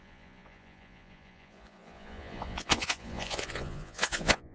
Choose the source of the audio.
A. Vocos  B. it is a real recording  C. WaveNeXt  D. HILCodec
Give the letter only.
A